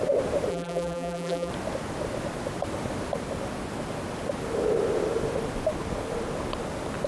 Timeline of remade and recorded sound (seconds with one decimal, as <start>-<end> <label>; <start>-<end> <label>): 0.0-0.5 recorded; 0.5-1.5 remade; 1.5-7.1 recorded

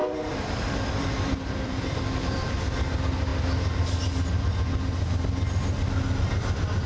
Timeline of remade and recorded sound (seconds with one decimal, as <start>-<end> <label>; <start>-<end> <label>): 0.0-2.5 remade; 2.5-6.9 recorded

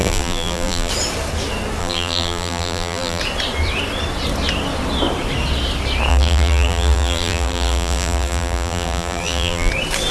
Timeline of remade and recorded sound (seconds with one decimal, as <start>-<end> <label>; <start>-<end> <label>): 0.0-0.9 remade; 0.9-1.8 recorded; 1.8-3.2 remade; 3.2-6.1 recorded; 6.1-9.7 remade; 9.7-10.1 recorded